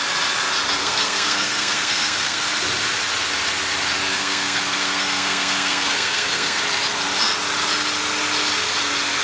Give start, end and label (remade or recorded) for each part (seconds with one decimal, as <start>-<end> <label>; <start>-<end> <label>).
0.0-0.8 recorded; 0.8-2.4 remade; 2.4-4.1 recorded; 4.1-6.6 remade; 6.6-9.2 recorded